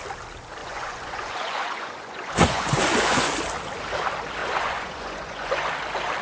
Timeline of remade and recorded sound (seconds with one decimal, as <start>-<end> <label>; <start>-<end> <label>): 0.0-0.6 recorded; 0.6-3.3 remade; 3.3-4.4 recorded; 4.4-5.7 remade; 5.7-6.2 recorded